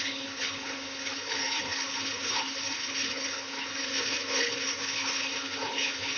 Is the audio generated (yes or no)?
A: yes